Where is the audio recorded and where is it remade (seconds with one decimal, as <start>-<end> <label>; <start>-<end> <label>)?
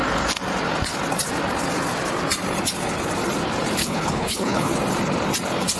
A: 0.0-3.8 recorded; 3.8-4.7 remade; 4.7-5.8 recorded